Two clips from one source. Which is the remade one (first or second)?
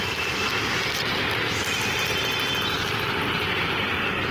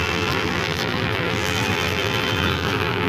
second